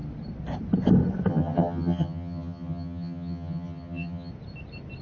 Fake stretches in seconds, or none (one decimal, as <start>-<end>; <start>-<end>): 1.3-4.3